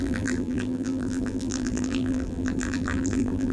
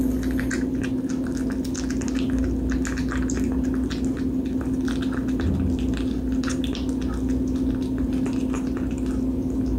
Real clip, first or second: second